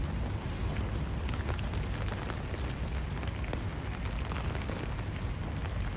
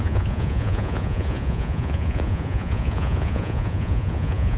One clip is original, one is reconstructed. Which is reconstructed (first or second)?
second